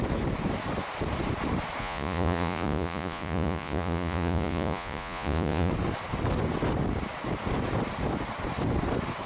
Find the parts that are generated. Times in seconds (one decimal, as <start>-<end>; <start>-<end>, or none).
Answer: 1.8-5.7